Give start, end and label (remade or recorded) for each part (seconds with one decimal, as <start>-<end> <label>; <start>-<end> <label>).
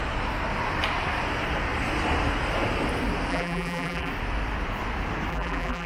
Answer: 0.0-3.3 recorded; 3.3-4.1 remade; 4.1-5.3 recorded; 5.3-5.9 remade